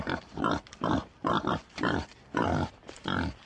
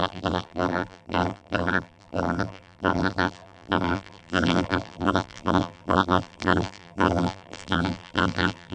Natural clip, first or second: first